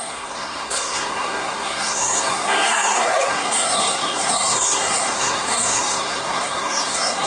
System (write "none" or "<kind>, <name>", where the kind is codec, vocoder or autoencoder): codec, SNAC